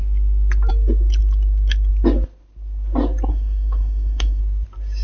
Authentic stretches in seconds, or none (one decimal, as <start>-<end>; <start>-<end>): 0.0-3.3; 4.4-5.0